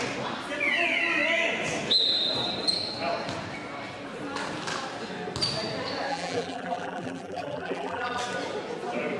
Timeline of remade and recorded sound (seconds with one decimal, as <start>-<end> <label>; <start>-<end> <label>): 0.0-6.1 recorded; 6.1-8.2 remade; 8.2-9.2 recorded